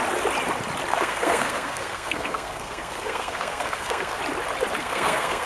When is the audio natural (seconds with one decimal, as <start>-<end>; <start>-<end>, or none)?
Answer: 0.0-0.9; 4.2-4.8